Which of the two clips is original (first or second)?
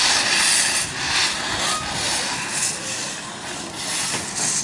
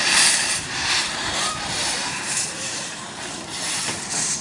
first